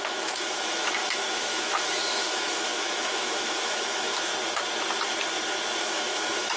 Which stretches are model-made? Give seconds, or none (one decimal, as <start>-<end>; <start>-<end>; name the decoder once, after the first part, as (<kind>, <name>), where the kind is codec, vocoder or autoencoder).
0.0-4.3 (autoencoder, DAC-VAE); 5.8-6.6

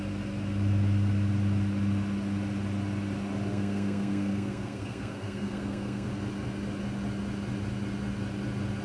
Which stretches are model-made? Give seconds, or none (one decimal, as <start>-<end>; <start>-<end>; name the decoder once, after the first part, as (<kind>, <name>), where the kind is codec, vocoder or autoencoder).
3.5-6.1 (codec, SNAC)

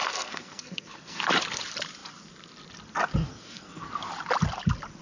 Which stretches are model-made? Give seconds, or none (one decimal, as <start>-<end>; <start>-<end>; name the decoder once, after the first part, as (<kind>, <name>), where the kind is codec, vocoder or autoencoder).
0.0-1.2 (codec, SNAC); 3.3-3.9

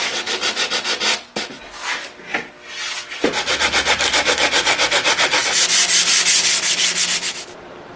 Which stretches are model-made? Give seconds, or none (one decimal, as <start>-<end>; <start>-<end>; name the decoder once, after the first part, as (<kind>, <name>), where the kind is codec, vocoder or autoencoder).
none

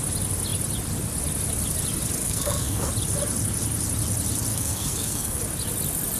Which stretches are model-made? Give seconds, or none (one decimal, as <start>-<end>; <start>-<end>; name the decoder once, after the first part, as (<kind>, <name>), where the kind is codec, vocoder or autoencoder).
2.2-2.9 (codec, SNAC); 4.5-5.4